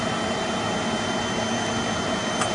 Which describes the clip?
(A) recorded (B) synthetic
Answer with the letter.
A